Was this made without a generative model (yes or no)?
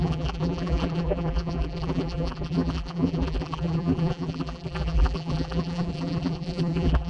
no